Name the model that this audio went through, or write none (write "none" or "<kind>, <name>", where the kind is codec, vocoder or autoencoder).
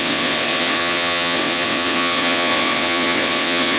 vocoder, WaveNeXt